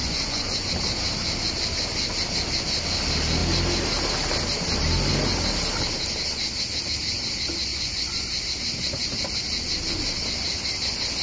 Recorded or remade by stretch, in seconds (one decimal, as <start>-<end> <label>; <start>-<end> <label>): 0.0-0.7 remade; 0.7-7.7 recorded; 7.7-8.4 remade; 8.4-11.2 recorded